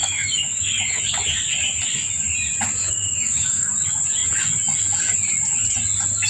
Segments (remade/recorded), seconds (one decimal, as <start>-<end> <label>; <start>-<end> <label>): 0.0-1.0 remade; 1.0-2.8 recorded; 2.8-3.7 remade; 3.7-6.3 recorded